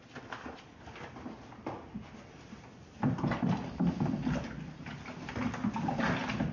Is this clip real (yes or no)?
yes